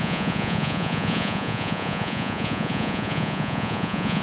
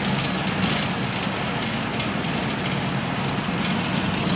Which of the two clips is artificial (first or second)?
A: first